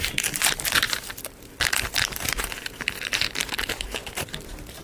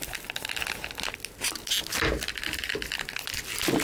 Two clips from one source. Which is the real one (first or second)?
second